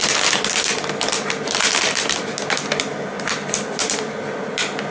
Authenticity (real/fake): real